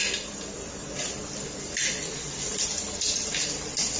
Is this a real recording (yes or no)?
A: yes